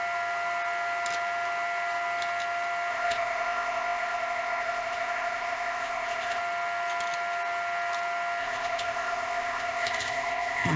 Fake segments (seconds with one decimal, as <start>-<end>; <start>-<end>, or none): 2.9-6.4; 8.4-10.8